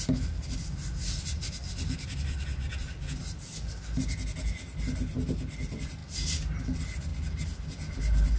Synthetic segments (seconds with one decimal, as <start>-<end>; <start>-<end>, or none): none